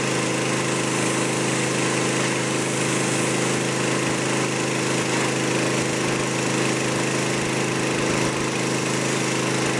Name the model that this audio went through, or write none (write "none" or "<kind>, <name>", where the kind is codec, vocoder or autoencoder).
none